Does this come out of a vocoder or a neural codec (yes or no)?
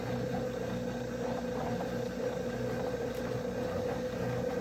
no